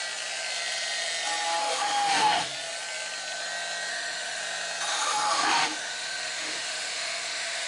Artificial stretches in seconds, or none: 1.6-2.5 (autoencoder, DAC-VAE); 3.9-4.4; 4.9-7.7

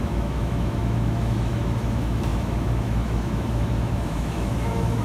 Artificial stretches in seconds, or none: 0.0-5.0 (autoencoder, DAC-VAE)